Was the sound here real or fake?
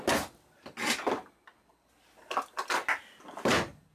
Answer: real